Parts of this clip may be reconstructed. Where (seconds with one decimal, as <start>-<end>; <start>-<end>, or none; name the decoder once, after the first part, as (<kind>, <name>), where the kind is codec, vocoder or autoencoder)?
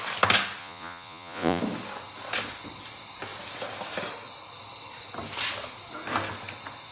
0.6-1.6 (vocoder, Vocos)